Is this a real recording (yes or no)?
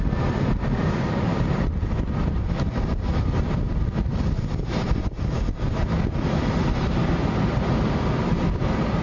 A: yes